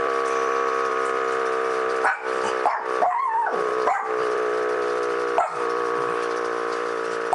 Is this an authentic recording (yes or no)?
no